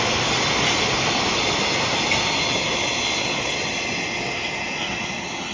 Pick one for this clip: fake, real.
real